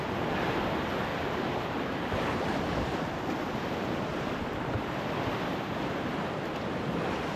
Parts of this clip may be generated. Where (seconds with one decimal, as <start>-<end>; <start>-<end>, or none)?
1.1-5.5

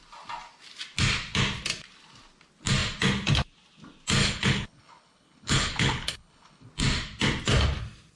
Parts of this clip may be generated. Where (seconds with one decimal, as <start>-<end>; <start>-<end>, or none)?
4.2-6.7